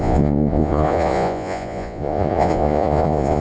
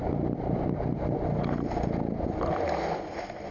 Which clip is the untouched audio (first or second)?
second